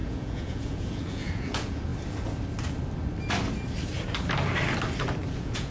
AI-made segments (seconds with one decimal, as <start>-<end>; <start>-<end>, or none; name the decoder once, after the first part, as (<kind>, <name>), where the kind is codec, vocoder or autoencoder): 0.0-1.9 (vocoder, Vocos); 5.3-5.7